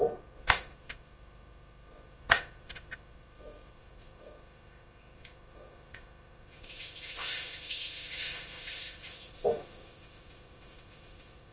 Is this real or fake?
fake